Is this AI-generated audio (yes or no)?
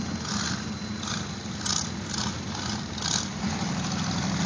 no